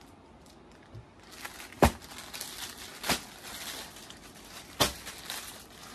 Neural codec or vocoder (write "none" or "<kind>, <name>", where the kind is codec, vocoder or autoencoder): none